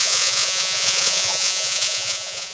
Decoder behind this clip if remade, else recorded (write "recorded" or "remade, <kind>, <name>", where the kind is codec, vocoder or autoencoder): remade, vocoder, Vocos